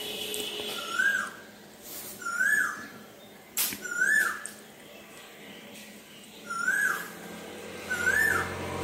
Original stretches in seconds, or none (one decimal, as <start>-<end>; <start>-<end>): 0.0-1.1; 1.7-2.1; 4.2-4.8; 7.3-8.8